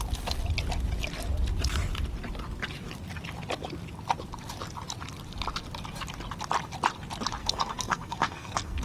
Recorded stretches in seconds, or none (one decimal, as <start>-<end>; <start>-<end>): 0.0-7.4

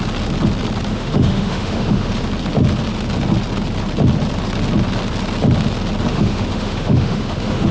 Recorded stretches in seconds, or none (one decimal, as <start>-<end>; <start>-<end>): 0.0-0.9; 2.1-6.1